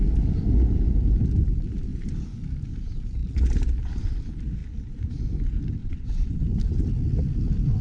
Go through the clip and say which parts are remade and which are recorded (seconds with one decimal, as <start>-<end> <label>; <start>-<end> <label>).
0.0-5.8 recorded; 5.8-6.4 remade; 6.4-7.8 recorded